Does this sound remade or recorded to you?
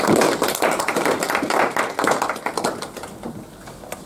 recorded